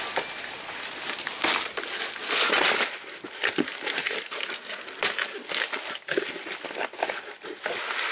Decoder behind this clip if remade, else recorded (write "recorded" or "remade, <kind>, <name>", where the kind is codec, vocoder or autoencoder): recorded